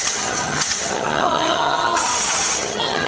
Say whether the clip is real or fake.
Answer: fake